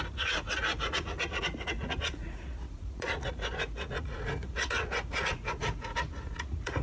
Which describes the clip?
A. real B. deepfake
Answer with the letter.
B